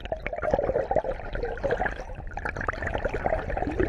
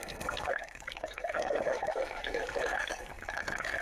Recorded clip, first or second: first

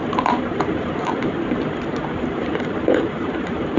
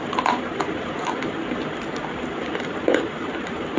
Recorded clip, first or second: second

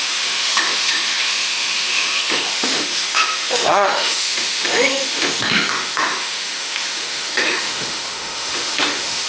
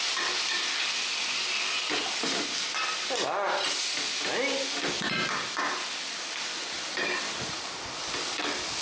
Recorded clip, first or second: second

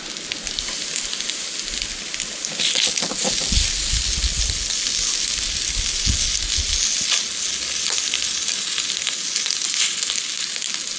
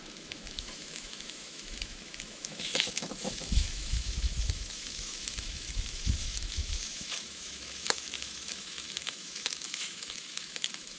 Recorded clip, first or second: first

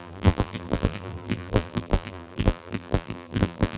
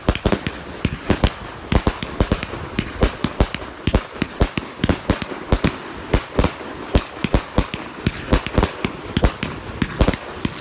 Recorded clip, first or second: second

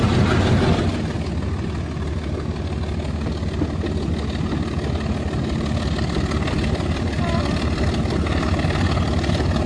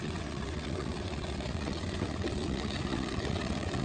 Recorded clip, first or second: first